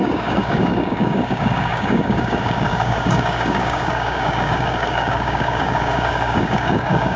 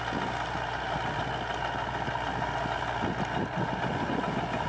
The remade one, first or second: first